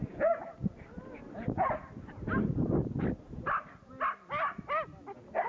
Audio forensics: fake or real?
real